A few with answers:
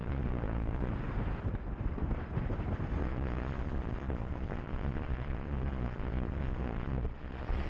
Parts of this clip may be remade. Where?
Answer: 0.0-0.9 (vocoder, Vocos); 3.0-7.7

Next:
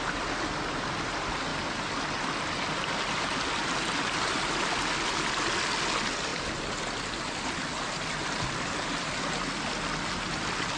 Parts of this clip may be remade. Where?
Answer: none